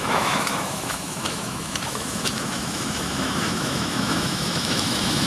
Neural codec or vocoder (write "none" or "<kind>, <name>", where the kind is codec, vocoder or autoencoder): autoencoder, DAC-VAE